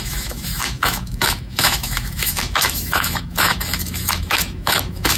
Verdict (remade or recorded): remade